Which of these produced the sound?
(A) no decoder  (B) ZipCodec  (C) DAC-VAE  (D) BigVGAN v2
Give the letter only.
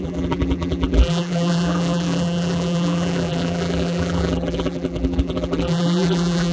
D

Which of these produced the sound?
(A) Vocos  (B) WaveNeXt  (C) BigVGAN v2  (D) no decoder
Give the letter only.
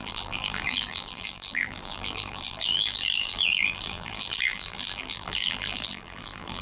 C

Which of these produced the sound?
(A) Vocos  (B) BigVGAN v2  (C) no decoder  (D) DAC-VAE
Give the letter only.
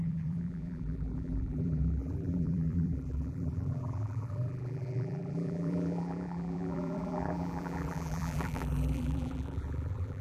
B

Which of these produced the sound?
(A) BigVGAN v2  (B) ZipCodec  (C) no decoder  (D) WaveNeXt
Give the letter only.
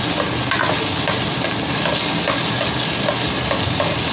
C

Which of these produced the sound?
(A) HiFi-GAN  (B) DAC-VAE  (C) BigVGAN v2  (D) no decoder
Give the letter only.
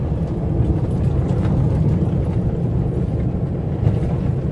D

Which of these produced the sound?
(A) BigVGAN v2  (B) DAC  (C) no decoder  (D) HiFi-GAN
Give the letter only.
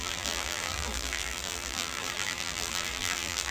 A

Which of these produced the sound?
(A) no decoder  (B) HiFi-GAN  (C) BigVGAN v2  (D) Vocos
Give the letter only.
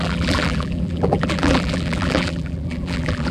C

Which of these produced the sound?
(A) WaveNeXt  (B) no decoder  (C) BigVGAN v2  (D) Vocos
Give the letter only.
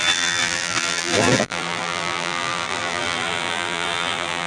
C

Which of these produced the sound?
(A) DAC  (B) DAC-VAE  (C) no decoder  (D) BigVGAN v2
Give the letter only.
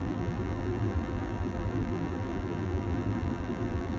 D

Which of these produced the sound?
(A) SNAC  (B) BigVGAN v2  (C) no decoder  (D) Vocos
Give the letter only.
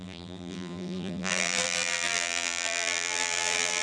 B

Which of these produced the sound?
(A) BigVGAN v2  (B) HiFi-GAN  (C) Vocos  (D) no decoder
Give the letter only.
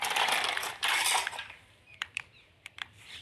A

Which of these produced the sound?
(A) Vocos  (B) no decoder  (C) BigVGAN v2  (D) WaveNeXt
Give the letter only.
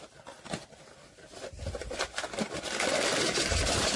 B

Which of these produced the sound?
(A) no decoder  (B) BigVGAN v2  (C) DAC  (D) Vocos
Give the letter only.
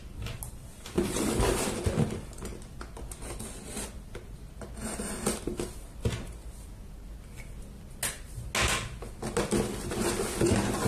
A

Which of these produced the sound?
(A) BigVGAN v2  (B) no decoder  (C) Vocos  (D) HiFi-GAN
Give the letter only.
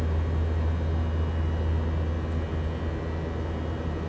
B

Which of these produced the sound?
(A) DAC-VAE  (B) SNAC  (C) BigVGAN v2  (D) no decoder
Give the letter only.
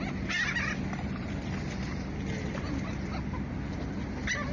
D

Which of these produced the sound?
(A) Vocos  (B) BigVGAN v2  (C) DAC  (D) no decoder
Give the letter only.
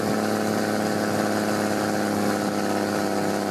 D